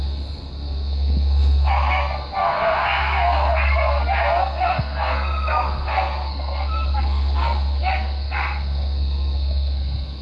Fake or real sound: fake